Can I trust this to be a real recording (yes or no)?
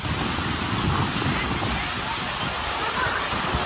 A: yes